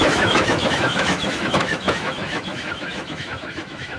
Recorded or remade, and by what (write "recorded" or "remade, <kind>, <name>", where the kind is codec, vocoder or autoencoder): remade, autoencoder, DAC-VAE